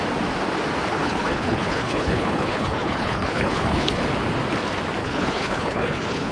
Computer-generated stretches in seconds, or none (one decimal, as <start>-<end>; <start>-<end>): 0.9-4.0; 5.0-6.3